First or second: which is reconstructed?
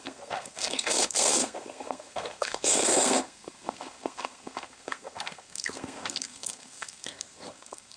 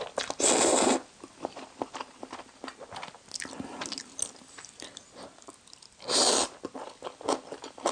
first